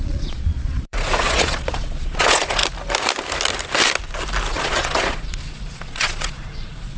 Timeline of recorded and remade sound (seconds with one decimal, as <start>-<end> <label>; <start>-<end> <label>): 0.0-2.6 remade; 2.6-4.5 recorded; 4.5-7.0 remade